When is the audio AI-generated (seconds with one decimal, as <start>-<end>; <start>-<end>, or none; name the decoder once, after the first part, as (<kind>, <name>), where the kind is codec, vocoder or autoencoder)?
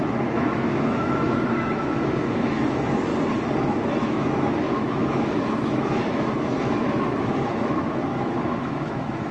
0.0-3.1 (autoencoder, DAC-VAE); 3.6-9.3